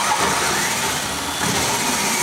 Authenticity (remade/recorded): recorded